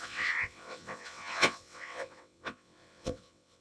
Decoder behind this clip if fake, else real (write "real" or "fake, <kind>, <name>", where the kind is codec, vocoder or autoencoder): fake, vocoder, WaveNeXt